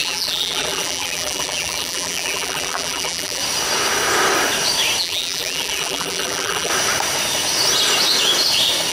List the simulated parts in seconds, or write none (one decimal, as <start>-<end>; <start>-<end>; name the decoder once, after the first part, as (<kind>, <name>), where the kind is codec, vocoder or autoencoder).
0.0-3.4 (vocoder, BigVGAN v2); 5.0-6.7

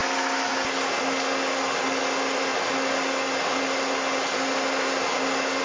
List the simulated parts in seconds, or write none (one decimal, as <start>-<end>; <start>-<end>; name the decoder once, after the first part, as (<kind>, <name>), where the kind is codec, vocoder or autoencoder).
none